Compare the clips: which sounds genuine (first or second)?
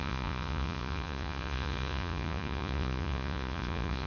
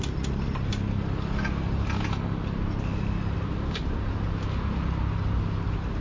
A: second